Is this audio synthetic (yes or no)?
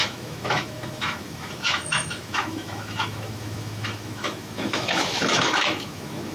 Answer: yes